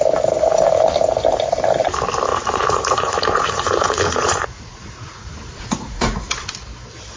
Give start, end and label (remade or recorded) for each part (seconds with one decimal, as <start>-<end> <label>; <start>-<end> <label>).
0.0-2.3 recorded; 2.3-6.5 remade; 6.5-7.2 recorded